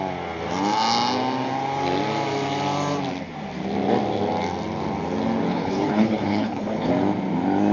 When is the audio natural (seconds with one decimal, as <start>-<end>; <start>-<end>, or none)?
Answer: 0.0-5.5; 6.9-7.7